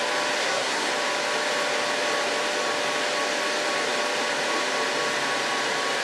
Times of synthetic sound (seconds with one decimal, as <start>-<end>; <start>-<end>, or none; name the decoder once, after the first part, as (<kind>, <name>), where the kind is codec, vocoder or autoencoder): 0.4-0.9 (codec, SNAC)